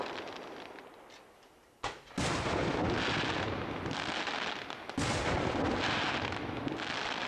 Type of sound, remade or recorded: recorded